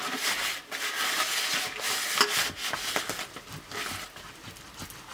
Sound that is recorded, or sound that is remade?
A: recorded